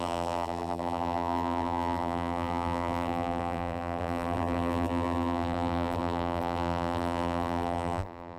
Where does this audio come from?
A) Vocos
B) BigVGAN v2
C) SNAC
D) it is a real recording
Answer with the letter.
B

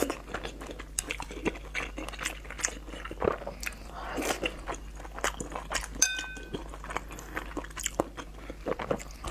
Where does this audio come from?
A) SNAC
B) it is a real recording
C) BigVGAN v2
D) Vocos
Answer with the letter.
B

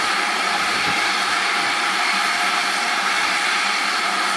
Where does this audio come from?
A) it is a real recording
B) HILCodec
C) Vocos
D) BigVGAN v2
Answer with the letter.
D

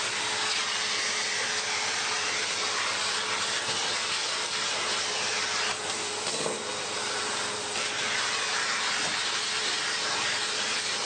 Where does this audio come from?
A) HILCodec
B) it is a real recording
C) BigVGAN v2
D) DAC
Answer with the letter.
C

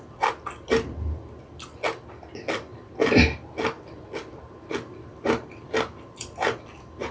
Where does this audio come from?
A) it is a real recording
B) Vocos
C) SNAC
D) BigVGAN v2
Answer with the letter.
A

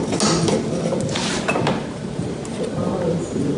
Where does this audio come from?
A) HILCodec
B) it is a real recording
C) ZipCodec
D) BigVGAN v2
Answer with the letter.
B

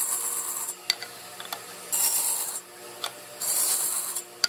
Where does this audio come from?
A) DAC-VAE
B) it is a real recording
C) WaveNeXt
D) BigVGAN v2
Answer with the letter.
B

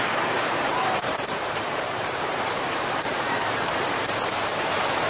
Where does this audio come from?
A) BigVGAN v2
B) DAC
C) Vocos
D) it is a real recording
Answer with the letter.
A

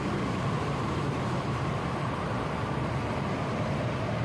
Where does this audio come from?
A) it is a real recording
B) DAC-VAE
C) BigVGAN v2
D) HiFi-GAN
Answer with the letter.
C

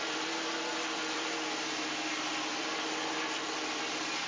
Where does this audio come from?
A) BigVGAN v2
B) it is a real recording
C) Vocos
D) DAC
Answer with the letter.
A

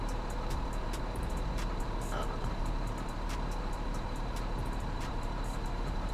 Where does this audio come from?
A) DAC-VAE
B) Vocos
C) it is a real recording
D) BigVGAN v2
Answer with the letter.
D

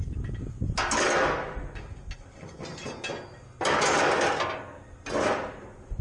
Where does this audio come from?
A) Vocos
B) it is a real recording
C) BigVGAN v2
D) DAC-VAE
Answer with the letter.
B